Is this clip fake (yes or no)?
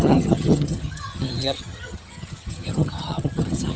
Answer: yes